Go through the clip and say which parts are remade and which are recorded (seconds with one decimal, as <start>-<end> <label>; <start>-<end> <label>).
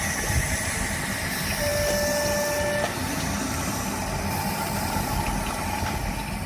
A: 0.0-6.5 recorded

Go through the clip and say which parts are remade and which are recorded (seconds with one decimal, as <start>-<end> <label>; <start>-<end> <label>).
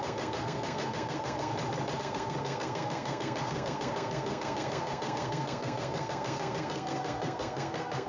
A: 0.0-1.5 remade; 1.5-2.0 recorded; 2.0-8.1 remade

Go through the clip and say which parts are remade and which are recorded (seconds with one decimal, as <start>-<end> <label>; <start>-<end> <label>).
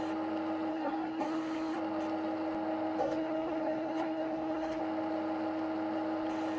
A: 0.0-0.7 recorded; 0.7-1.8 remade; 1.8-3.0 recorded; 3.0-4.8 remade; 4.8-6.6 recorded